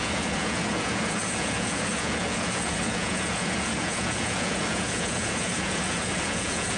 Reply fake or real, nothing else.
fake